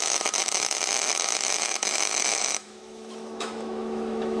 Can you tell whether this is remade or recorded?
remade